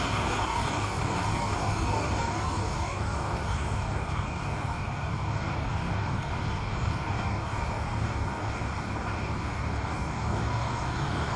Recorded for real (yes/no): no